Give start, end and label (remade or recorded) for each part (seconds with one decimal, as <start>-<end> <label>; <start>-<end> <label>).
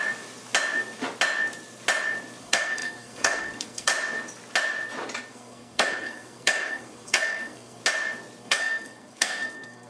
0.0-2.4 recorded; 2.4-3.9 remade; 3.9-5.3 recorded; 5.3-7.8 remade; 7.8-8.4 recorded; 8.4-9.9 remade